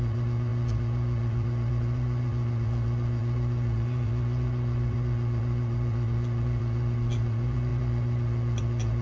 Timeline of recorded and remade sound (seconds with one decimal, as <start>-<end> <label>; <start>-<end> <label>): 0.0-9.0 remade